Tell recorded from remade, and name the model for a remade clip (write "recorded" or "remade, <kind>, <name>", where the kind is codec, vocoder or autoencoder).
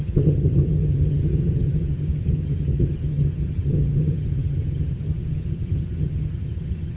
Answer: remade, vocoder, HiFi-GAN